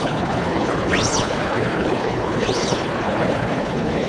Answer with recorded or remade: remade